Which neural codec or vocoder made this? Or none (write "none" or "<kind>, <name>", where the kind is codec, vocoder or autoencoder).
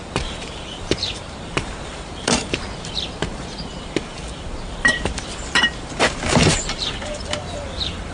vocoder, BigVGAN v2